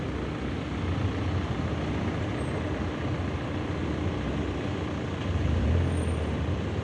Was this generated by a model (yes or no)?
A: no